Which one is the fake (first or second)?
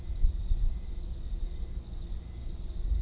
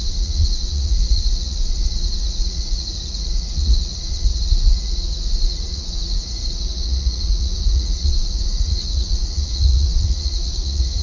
second